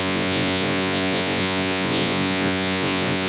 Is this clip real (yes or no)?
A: no